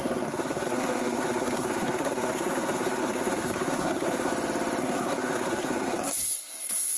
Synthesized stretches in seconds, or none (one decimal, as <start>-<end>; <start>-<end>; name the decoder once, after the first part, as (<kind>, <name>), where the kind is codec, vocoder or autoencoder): 0.0-4.3 (codec, SNAC); 4.8-7.0